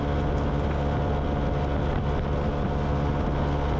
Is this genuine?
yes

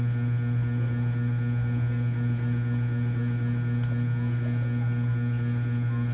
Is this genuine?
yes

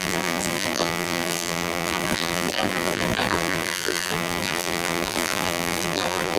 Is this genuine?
no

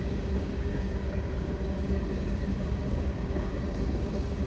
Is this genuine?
no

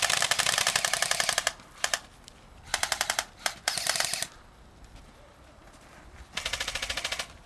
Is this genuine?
yes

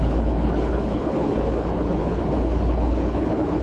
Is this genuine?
no